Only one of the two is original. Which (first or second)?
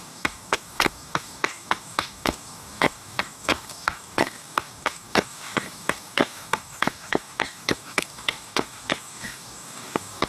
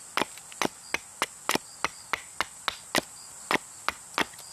second